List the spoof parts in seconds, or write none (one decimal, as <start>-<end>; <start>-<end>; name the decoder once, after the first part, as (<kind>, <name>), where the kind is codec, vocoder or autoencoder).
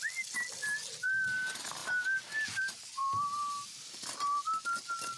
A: none